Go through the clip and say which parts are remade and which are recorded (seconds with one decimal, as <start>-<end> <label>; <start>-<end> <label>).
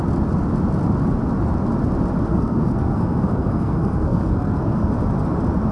0.0-2.3 recorded; 2.3-4.9 remade; 4.9-5.7 recorded